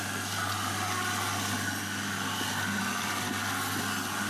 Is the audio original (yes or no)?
yes